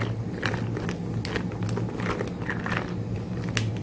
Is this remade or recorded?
recorded